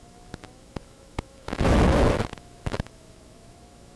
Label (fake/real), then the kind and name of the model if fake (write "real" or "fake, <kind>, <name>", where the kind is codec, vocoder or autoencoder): fake, autoencoder, DAC-VAE